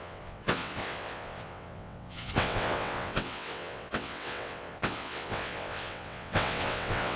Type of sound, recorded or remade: remade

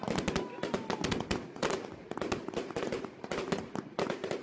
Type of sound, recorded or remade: recorded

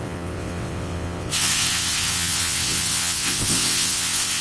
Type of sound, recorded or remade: remade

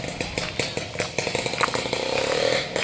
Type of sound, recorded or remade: recorded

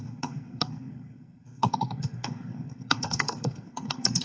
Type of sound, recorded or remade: remade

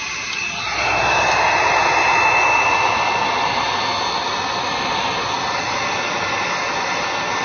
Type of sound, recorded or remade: recorded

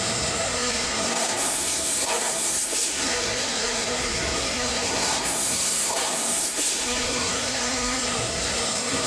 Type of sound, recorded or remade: remade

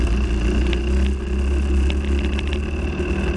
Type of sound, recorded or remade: recorded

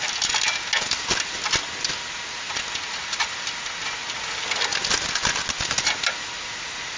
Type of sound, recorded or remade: recorded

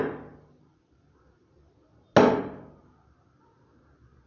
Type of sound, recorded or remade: recorded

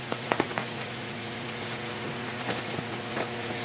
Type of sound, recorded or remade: remade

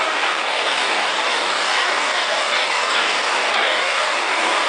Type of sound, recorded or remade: remade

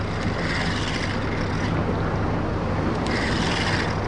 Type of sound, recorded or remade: recorded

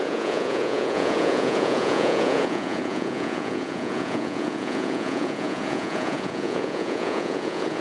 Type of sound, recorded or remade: remade